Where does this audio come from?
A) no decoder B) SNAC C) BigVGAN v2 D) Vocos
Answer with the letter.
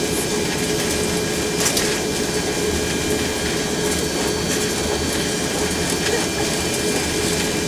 A